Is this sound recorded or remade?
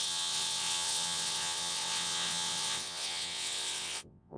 remade